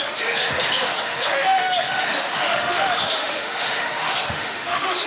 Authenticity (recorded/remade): remade